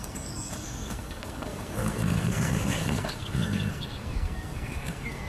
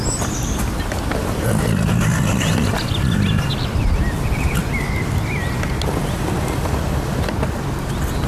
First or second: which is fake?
first